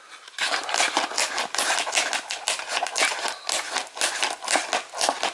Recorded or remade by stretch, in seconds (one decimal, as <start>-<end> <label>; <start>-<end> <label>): 0.0-5.3 recorded